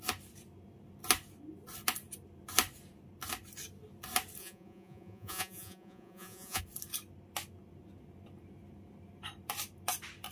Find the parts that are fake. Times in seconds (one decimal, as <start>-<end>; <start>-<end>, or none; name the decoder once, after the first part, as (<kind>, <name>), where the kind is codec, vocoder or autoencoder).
4.4-6.6 (vocoder, Vocos)